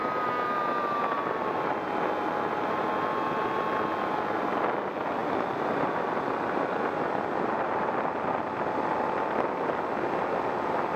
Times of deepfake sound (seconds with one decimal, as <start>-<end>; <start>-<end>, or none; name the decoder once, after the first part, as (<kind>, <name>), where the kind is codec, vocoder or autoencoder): none